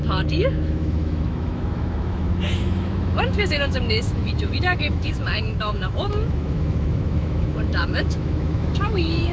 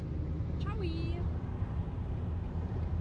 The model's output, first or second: first